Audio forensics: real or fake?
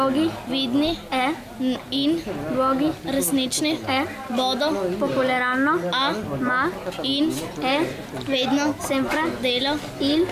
real